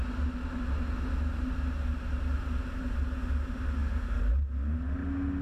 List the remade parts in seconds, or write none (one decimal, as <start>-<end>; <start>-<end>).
3.8-4.3